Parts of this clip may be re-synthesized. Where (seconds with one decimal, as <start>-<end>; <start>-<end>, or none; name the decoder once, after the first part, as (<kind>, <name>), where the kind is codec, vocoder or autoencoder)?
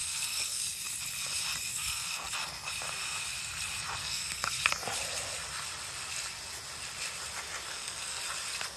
0.0-0.6 (codec, SNAC); 1.7-2.3; 4.0-4.5; 7.7-8.2